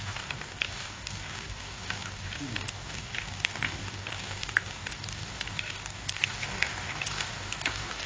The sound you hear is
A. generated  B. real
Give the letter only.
A